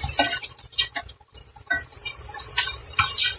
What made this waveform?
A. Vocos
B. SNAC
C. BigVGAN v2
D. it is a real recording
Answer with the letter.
C